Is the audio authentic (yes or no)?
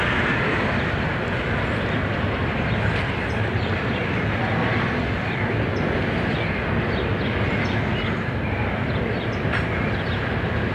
yes